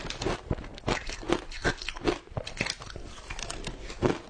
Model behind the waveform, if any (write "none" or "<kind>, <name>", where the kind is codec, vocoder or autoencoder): none